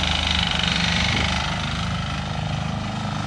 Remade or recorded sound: recorded